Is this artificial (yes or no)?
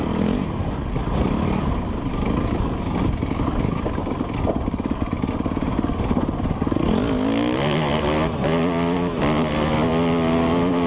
no